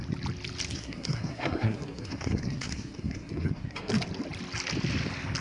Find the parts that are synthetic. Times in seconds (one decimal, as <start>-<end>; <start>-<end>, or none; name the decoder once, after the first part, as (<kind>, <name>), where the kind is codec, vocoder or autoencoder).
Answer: 0.7-3.9 (codec, SNAC)